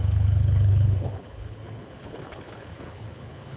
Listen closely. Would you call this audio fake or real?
fake